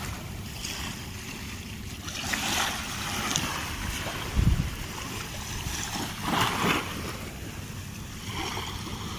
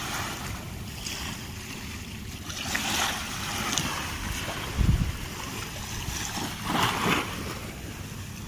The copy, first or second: first